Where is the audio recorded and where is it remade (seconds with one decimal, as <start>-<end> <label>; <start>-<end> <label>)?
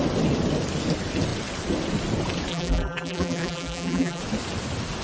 0.0-2.5 recorded; 2.5-4.2 remade; 4.2-5.0 recorded